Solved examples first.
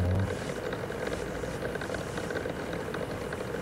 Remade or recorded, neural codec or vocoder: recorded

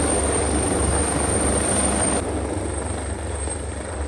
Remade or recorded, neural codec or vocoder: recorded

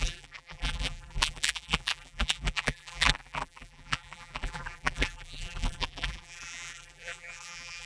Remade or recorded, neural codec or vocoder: remade, vocoder, BigVGAN v2